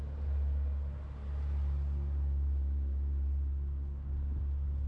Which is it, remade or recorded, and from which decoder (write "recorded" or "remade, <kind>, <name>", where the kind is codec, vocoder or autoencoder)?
recorded